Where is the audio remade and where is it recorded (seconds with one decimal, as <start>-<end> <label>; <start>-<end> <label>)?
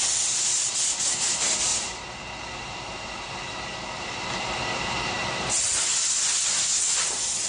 0.0-7.5 recorded